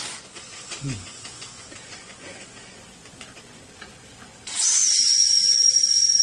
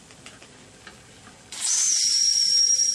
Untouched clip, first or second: second